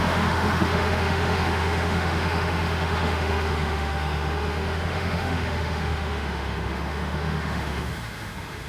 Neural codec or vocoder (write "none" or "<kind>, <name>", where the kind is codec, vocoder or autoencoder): autoencoder, DAC-VAE